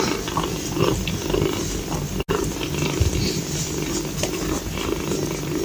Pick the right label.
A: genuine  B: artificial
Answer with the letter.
A